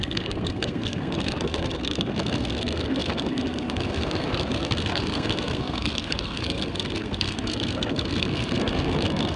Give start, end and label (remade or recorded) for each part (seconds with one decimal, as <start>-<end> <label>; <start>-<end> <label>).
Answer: 0.0-9.4 remade